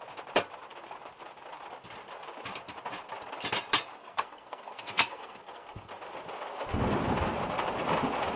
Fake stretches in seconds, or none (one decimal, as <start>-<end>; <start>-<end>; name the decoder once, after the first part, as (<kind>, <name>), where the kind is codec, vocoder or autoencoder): 4.0-5.9 (codec, SNAC)